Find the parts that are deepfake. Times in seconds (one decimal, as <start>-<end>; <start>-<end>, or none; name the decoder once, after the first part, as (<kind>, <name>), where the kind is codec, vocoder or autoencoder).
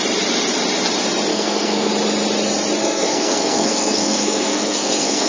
1.3-1.9 (codec, SNAC); 2.8-5.3